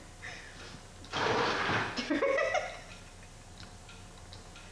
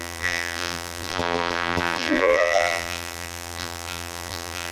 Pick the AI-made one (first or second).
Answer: second